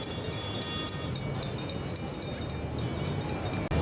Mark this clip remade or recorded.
recorded